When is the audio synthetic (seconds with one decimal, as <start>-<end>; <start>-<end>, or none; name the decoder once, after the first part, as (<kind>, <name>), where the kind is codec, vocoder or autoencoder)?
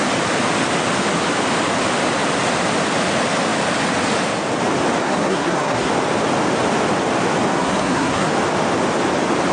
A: 5.0-5.9 (codec, SNAC); 7.5-8.3